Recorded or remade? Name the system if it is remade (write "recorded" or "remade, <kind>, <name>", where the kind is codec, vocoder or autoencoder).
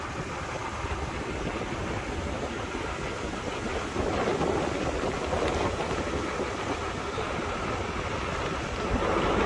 recorded